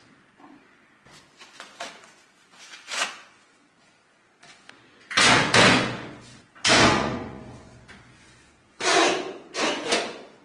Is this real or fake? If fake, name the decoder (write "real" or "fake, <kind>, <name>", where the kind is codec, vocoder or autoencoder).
fake, vocoder, Vocos